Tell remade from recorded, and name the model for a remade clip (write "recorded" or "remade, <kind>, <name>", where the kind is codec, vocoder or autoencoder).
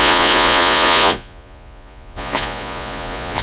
remade, vocoder, Vocos